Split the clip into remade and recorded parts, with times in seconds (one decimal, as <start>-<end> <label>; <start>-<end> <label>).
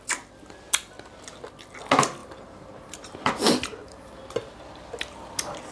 0.0-2.2 recorded; 2.2-3.3 remade; 3.3-5.7 recorded